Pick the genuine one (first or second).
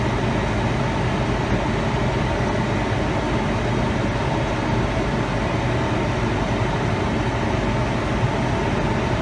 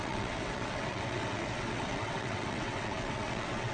first